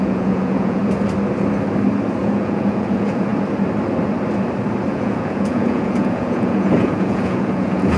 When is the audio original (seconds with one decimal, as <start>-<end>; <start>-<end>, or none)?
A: 0.8-2.2; 3.3-4.9